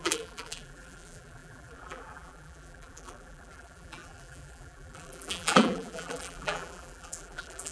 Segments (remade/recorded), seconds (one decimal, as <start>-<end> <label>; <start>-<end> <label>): 0.0-7.7 remade